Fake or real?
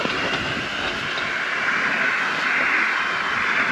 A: real